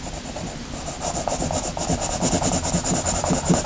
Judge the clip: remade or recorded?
recorded